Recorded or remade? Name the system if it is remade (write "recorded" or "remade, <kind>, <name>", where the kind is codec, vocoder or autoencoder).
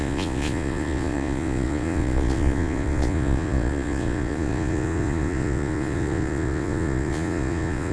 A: remade, vocoder, Vocos